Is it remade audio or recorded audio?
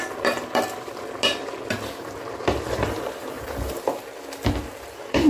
recorded